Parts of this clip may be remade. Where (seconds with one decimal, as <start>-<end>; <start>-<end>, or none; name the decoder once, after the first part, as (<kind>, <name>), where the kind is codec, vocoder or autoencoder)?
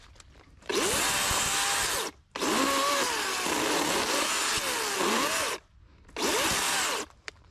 none